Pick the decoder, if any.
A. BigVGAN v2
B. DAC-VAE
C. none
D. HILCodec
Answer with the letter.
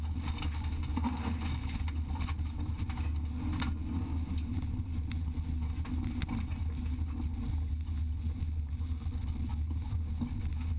C